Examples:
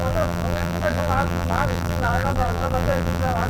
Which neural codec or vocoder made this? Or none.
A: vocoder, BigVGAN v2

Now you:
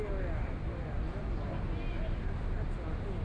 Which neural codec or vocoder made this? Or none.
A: none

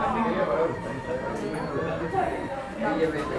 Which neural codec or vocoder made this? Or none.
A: none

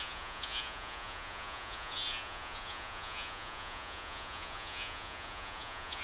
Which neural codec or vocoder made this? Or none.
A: vocoder, Vocos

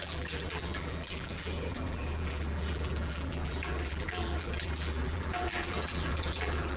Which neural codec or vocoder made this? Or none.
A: vocoder, BigVGAN v2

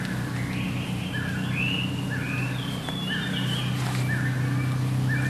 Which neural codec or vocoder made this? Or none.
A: none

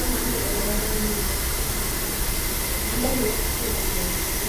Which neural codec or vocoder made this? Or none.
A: none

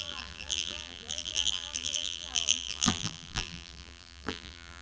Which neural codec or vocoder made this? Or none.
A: vocoder, BigVGAN v2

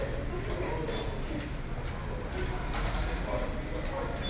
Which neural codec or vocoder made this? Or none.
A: none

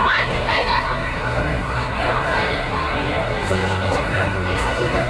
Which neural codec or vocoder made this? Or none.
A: codec, SNAC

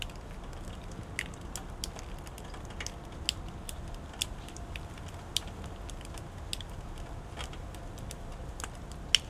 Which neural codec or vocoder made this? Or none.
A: none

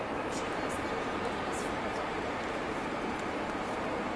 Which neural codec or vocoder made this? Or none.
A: vocoder, BigVGAN v2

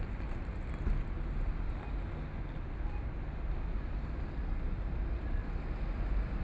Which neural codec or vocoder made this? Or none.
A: none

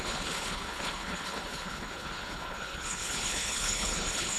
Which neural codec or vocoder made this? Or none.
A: codec, HILCodec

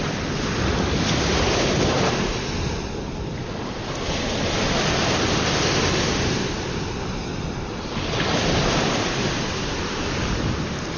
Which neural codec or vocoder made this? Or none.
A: none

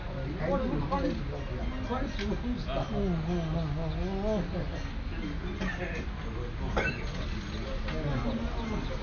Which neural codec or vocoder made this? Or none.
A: none